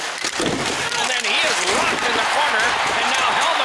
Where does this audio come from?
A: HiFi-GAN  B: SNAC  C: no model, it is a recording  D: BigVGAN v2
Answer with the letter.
C